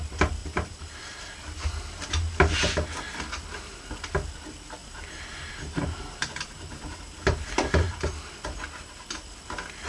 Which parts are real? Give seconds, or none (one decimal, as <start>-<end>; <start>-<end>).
0.0-0.4; 1.3-4.8; 8.0-9.9